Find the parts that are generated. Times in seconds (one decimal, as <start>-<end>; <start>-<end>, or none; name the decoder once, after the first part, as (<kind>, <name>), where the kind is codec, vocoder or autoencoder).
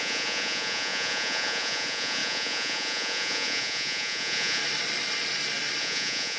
0.0-4.6 (vocoder, Vocos); 5.8-6.4